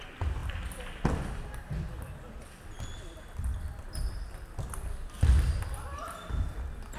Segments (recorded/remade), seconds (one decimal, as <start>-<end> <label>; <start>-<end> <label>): 0.0-7.0 recorded